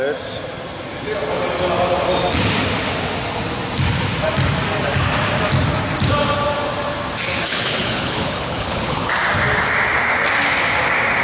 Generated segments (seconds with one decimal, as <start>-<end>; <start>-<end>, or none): 7.5-9.1